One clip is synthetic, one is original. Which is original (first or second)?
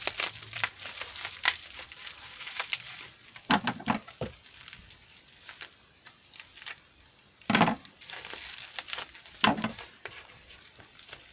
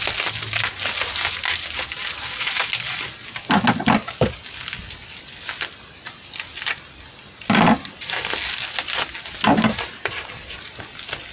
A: second